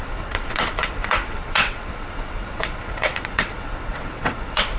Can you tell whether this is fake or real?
fake